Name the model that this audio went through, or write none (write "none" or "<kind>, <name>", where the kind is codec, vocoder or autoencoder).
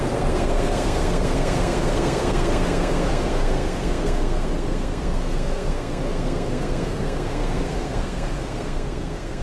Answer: codec, SNAC